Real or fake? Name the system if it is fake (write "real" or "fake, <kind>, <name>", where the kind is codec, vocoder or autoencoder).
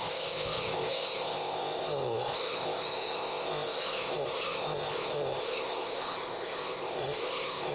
fake, codec, ZipCodec